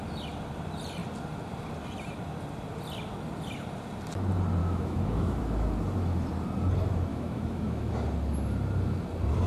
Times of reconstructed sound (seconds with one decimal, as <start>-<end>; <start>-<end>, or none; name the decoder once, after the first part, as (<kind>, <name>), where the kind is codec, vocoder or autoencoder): 4.6-5.4 (autoencoder, DAC-VAE); 7.1-7.9